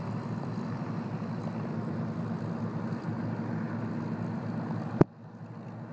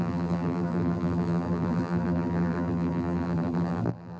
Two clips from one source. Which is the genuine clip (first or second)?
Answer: first